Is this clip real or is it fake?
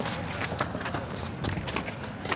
real